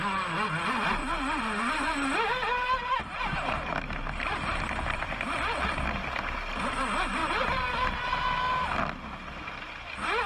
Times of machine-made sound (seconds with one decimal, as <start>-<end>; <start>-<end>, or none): 1.0-5.2